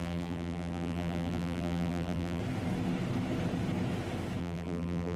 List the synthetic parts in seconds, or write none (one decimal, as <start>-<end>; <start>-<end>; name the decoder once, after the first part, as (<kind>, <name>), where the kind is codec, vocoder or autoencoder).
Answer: 0.0-2.4 (vocoder, BigVGAN v2); 4.4-5.2